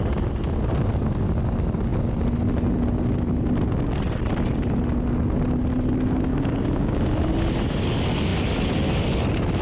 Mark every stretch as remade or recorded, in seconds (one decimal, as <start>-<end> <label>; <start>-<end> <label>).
0.0-6.3 recorded; 6.3-7.0 remade; 7.0-9.6 recorded